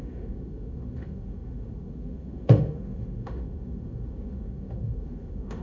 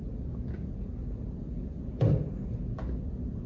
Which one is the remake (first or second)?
first